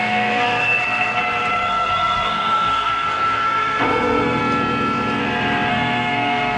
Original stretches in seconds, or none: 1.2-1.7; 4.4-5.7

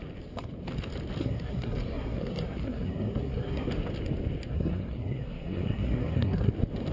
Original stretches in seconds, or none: 0.0-1.2; 3.7-4.5; 6.5-6.9